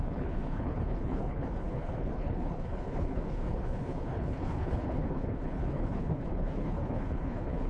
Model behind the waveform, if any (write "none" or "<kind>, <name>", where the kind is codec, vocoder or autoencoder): codec, HILCodec